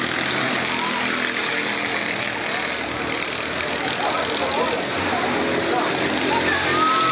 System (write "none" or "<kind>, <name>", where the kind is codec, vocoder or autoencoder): none